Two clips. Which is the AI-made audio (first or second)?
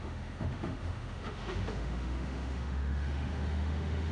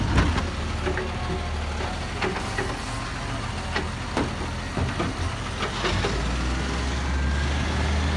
first